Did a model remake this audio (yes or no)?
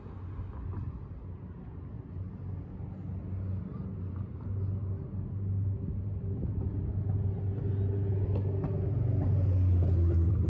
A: no